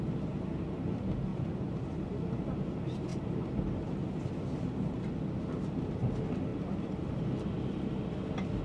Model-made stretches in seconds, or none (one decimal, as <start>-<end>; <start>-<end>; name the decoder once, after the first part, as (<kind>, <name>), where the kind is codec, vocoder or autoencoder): 1.3-2.7 (vocoder, BigVGAN v2); 6.5-7.1